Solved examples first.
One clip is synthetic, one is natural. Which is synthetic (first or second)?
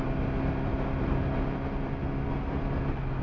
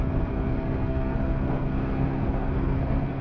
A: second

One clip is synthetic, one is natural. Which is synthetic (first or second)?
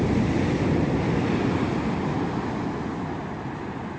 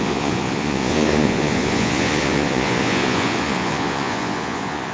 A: second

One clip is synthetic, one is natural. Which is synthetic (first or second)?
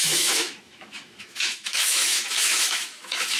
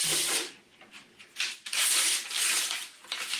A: first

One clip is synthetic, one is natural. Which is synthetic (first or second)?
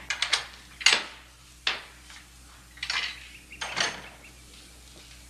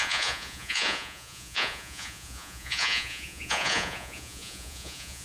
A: second